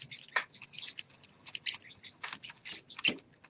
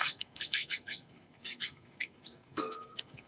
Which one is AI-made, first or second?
second